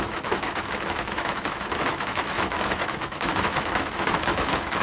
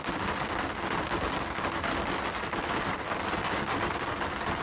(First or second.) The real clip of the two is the second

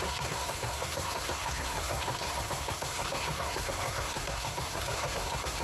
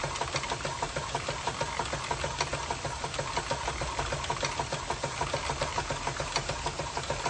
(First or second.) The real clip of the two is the second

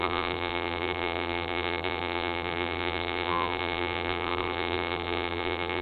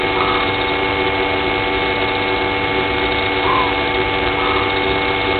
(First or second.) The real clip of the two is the second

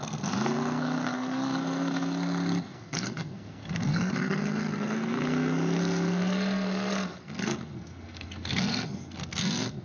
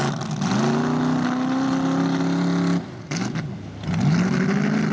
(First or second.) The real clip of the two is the second